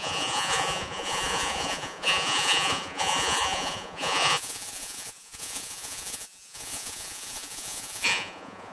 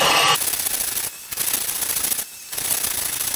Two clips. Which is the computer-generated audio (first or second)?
first